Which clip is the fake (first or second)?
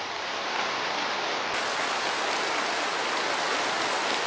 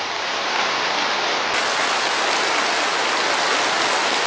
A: first